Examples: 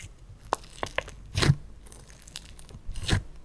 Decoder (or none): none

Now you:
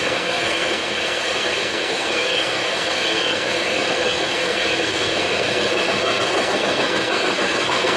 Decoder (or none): codec, SNAC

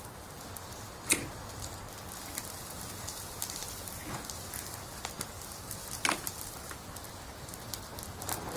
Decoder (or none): none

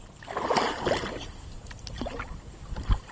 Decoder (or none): none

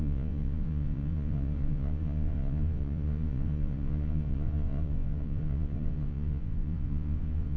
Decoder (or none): vocoder, Vocos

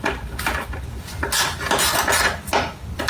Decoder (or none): none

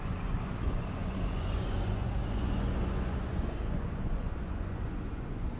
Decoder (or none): vocoder, Vocos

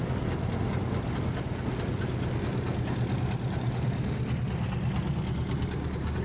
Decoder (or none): none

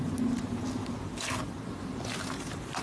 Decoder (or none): none